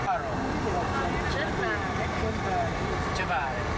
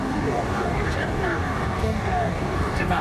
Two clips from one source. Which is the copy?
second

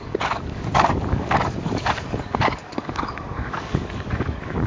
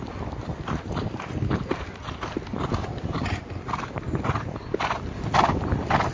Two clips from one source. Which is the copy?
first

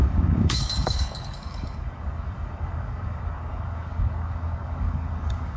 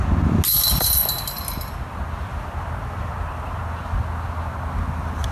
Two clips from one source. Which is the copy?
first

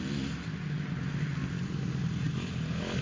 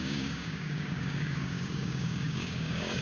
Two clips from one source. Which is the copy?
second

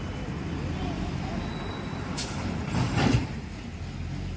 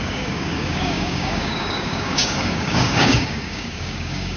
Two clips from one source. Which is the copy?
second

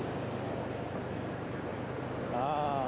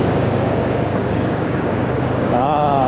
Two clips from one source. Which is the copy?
second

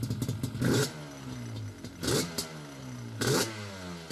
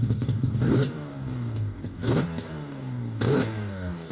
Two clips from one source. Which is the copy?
second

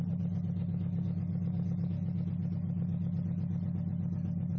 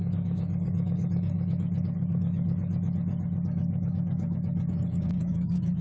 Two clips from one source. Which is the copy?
second